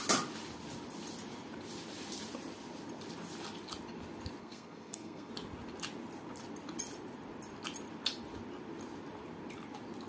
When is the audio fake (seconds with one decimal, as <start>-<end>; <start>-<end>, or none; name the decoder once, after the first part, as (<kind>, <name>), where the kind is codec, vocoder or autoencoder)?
4.4-5.3 (codec, SNAC)